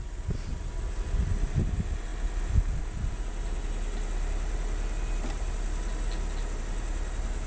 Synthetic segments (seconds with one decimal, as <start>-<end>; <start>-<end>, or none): none